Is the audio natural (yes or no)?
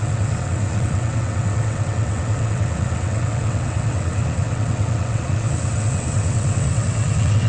no